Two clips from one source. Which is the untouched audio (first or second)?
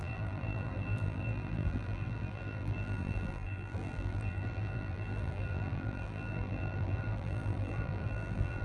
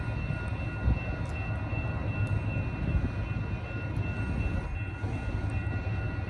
second